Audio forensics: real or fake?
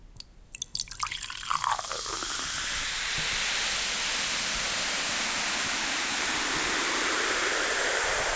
real